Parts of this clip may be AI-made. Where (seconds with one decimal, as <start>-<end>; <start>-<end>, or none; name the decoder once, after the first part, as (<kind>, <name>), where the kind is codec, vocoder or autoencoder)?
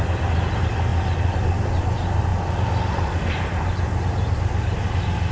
none